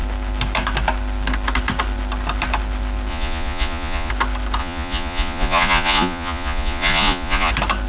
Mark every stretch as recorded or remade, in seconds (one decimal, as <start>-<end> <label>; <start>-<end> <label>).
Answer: 0.0-3.1 recorded; 3.1-4.1 remade; 4.1-4.6 recorded; 4.6-7.5 remade; 7.5-7.9 recorded